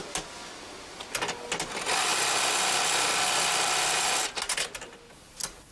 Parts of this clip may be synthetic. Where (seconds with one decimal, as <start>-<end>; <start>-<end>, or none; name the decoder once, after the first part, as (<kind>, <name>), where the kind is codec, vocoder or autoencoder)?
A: none